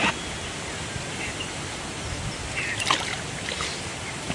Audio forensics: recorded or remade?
recorded